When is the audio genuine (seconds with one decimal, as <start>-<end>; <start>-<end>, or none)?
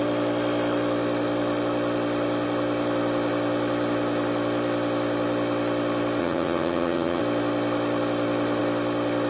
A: 0.0-6.2; 7.2-9.3